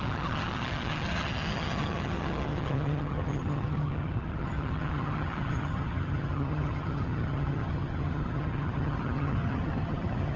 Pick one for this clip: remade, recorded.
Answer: remade